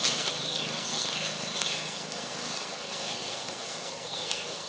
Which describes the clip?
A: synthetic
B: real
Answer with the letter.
A